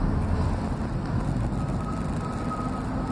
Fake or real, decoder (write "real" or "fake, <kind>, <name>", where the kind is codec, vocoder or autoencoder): real